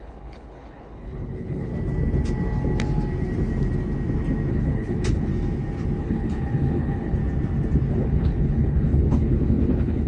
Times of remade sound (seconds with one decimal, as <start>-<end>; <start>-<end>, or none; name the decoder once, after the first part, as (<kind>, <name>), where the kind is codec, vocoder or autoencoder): 0.0-1.7 (codec, HILCodec); 4.5-5.3; 6.0-7.2; 7.9-10.1